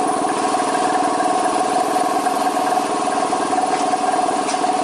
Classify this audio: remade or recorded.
recorded